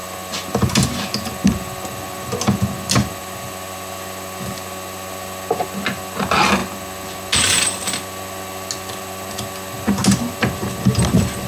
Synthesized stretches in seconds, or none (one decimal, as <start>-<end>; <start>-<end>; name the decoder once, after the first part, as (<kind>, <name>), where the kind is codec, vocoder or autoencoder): none